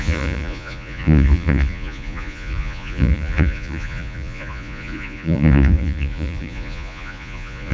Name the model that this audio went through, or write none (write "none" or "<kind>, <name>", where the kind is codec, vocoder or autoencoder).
vocoder, Vocos